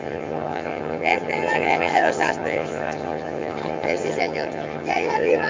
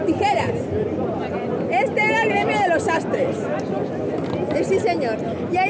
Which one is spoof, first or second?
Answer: first